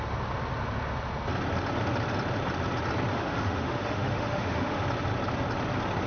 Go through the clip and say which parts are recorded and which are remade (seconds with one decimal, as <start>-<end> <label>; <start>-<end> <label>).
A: 0.0-3.1 recorded; 3.1-4.8 remade; 4.8-6.1 recorded